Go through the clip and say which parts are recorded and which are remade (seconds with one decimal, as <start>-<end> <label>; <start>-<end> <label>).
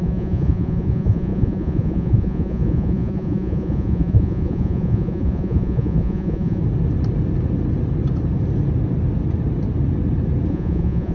0.0-6.6 remade; 6.6-10.5 recorded; 10.5-11.1 remade